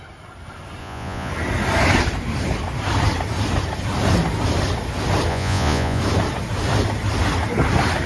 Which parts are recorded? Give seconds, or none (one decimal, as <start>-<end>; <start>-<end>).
0.0-0.8; 1.3-5.3; 6.0-8.1